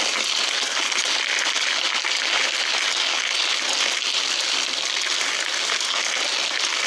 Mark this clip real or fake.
real